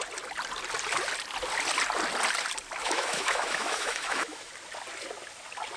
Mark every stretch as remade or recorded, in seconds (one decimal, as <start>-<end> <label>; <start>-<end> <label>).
0.0-2.8 recorded; 2.8-4.5 remade; 4.5-5.8 recorded

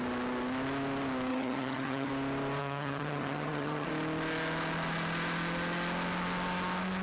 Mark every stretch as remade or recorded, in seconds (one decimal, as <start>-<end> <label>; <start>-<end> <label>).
0.0-1.3 recorded; 1.3-2.1 remade; 2.1-2.6 recorded; 2.6-3.9 remade; 3.9-7.0 recorded